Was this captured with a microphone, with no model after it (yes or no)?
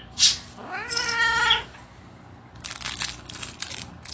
yes